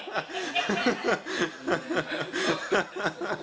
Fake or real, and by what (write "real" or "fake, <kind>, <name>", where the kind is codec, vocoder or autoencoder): real